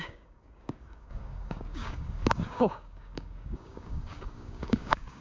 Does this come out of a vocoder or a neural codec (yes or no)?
yes